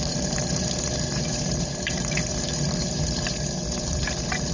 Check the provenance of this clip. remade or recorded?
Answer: remade